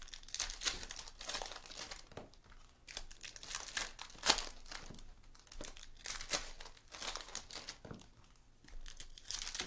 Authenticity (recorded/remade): recorded